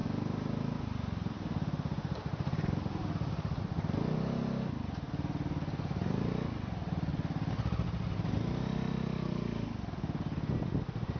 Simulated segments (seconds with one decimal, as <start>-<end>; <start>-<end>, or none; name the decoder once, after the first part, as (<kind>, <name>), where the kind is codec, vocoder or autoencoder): none